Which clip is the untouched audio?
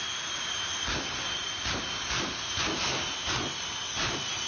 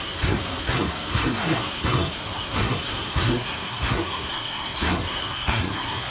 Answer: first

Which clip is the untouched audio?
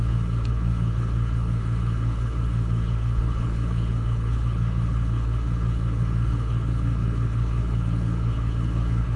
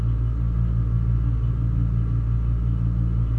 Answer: second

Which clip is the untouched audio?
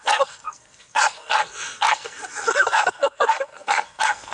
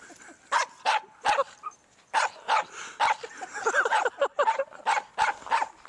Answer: second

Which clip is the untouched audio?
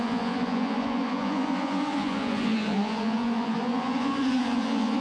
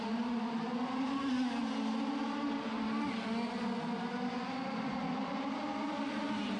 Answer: second